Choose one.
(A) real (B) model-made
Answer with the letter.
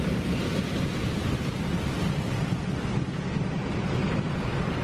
A